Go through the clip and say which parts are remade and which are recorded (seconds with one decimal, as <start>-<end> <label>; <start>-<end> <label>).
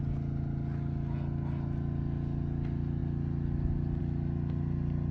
0.0-5.1 recorded